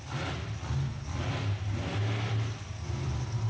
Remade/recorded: recorded